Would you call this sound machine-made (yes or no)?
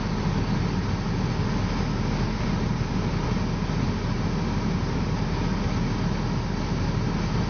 no